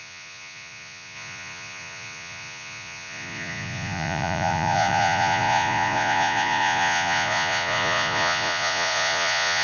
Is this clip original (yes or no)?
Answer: no